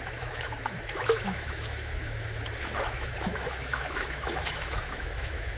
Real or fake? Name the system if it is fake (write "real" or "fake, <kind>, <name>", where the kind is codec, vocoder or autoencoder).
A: fake, autoencoder, DAC-VAE